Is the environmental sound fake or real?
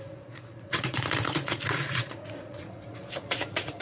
fake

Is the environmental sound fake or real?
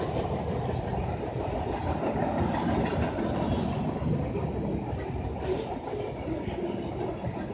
real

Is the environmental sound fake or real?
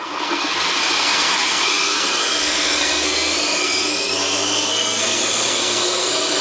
fake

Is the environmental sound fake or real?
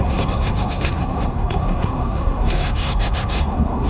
fake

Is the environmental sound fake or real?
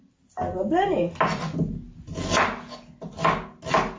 real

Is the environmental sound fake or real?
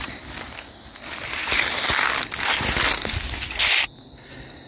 real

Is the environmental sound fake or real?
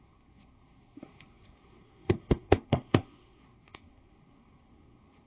fake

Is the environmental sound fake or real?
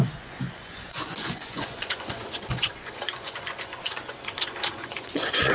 fake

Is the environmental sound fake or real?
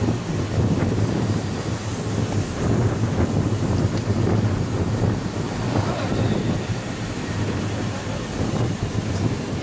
real